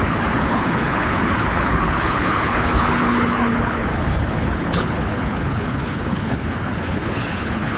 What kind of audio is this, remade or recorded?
remade